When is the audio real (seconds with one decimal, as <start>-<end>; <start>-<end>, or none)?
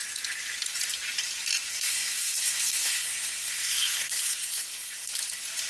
0.0-1.7; 5.1-5.7